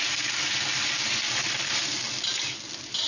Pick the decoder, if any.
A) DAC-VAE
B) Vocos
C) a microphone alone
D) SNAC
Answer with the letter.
C